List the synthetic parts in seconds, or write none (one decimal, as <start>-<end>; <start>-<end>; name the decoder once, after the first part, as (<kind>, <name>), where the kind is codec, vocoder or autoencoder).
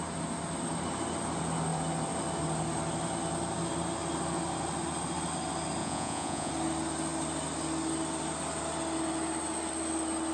5.8-6.5 (vocoder, Vocos)